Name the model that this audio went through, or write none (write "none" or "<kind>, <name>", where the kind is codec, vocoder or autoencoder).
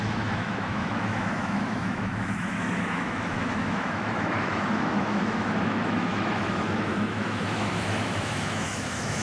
autoencoder, DAC-VAE